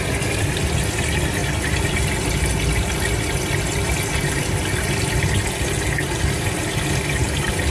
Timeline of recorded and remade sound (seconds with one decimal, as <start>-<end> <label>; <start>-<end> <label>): 0.0-7.7 recorded